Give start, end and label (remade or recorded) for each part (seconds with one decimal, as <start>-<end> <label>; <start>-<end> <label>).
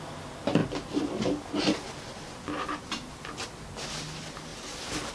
0.0-5.1 recorded